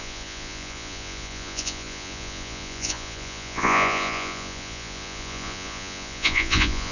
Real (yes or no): no